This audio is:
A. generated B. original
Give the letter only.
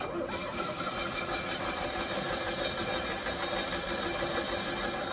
B